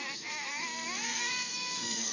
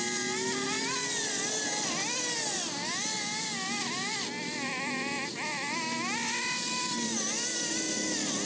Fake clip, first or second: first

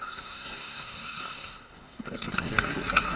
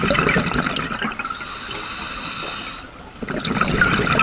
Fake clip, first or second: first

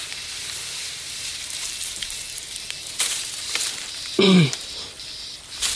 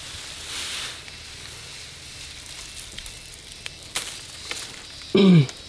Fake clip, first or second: first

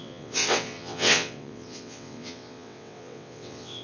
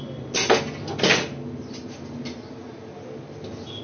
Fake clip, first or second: first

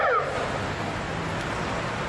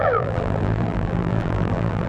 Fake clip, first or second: second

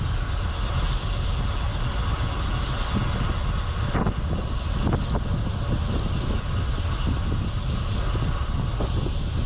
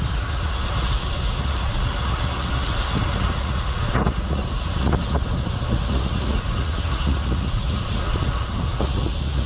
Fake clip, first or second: second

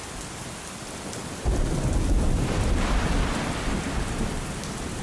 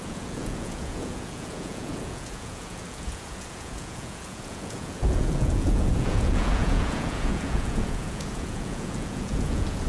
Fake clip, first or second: second